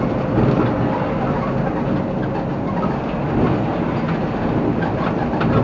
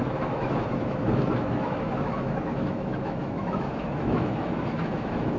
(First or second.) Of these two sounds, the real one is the first